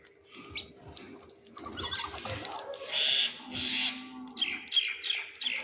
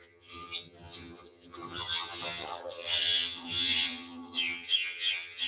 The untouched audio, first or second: first